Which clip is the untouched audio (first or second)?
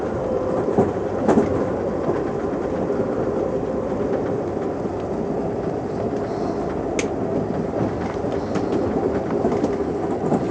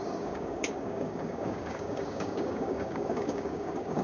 first